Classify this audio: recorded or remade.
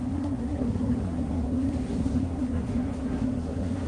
remade